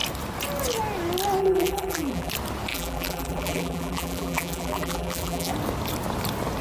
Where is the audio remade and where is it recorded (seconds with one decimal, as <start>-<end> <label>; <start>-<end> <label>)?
0.0-1.4 recorded; 1.4-2.3 remade; 2.3-2.7 recorded; 2.7-5.5 remade; 5.5-6.6 recorded

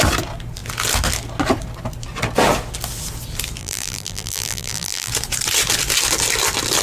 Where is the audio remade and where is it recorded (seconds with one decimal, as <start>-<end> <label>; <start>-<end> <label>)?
0.0-3.6 recorded; 3.6-5.1 remade; 5.1-6.8 recorded

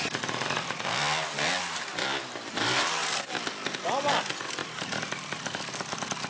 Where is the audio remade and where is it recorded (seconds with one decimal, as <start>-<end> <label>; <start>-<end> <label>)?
0.0-4.6 recorded; 4.6-5.4 remade; 5.4-6.3 recorded